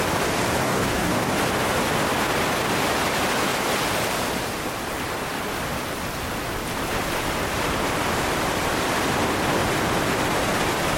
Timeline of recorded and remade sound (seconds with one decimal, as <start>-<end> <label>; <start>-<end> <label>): 0.0-0.6 recorded; 0.6-1.3 remade; 1.3-11.0 recorded